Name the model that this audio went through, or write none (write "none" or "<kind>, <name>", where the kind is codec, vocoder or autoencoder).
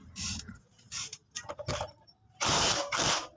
vocoder, BigVGAN v2